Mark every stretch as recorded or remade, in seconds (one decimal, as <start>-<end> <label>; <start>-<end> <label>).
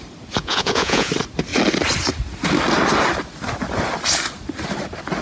0.0-0.4 recorded; 0.4-1.1 remade; 1.1-5.2 recorded